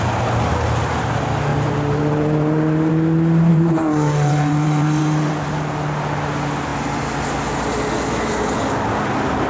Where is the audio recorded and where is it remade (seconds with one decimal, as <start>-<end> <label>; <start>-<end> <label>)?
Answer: 0.0-1.5 recorded; 1.5-2.9 remade; 2.9-3.5 recorded; 3.5-5.6 remade; 5.6-9.5 recorded